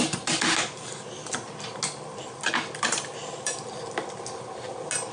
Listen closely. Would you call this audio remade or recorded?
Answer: recorded